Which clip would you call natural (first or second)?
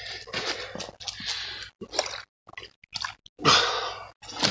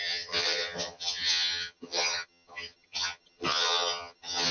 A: first